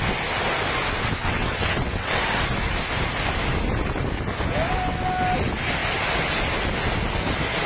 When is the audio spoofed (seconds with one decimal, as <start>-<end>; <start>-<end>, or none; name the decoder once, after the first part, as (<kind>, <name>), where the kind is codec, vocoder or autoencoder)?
1.2-2.2 (vocoder, WaveNeXt)